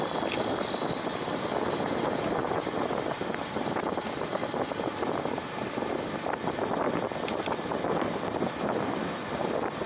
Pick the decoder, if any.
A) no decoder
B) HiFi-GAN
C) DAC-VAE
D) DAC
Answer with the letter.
A